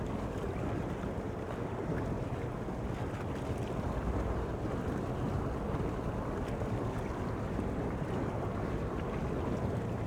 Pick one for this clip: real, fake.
real